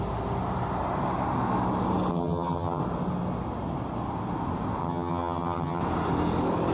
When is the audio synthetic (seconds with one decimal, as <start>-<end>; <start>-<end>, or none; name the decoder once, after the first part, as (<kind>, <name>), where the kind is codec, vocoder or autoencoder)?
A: 2.1-2.8 (vocoder, HiFi-GAN); 4.8-5.8